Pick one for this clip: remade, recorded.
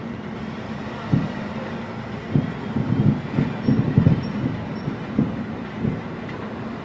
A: recorded